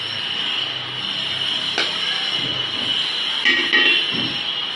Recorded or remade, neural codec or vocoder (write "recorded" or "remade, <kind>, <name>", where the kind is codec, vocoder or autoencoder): recorded